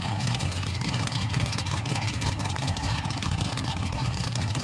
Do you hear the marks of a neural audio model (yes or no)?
yes